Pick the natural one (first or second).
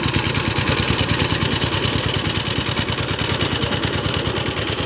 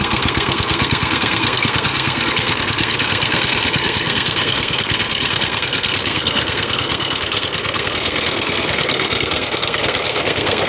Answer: first